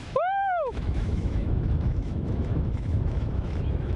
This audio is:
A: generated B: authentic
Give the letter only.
A